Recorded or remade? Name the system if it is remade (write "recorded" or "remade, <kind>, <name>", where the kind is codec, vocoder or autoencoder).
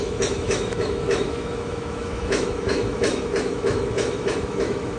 remade, autoencoder, DAC-VAE